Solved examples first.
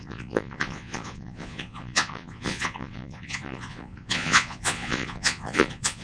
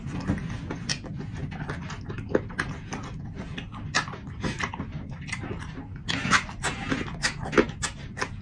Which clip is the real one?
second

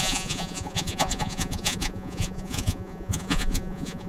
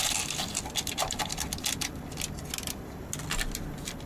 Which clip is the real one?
second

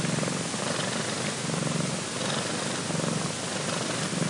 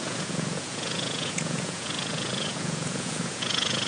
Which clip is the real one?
first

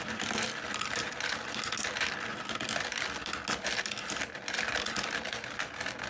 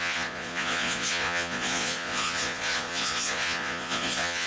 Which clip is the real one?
first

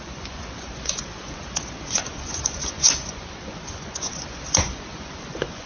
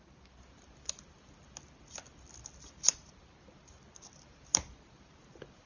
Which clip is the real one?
second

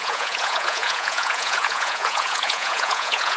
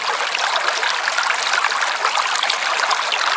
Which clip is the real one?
second